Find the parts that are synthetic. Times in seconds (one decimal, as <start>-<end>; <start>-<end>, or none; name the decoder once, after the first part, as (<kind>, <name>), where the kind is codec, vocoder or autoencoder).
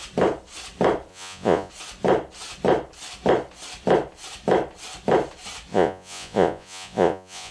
1.1-1.7 (vocoder, Vocos); 5.7-7.5